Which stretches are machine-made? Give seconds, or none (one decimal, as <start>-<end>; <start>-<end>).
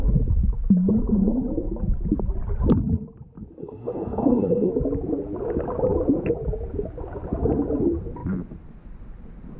3.6-4.7